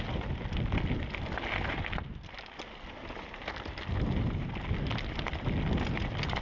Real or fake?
real